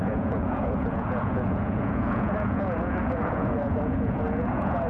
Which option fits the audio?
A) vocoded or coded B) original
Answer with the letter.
A